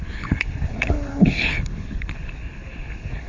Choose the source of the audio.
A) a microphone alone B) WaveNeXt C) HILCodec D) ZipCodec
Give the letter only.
C